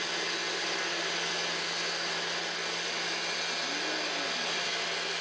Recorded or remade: recorded